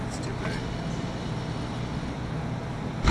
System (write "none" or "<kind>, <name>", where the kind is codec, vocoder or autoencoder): none